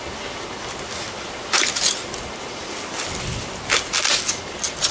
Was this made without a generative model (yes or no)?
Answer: yes